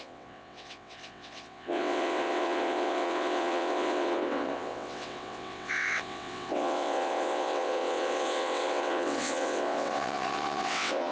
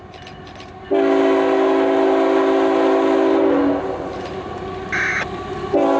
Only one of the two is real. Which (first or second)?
second